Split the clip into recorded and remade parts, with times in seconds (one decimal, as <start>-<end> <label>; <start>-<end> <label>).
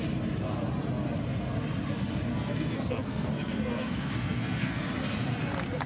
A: 0.0-2.3 recorded; 2.3-4.8 remade; 4.8-5.9 recorded